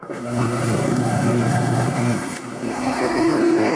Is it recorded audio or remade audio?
remade